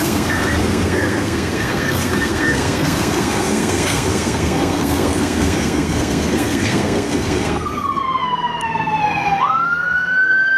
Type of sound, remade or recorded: remade